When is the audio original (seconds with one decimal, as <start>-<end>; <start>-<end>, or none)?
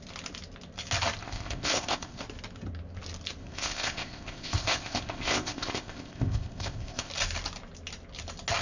0.0-1.2; 2.2-3.4; 7.1-8.6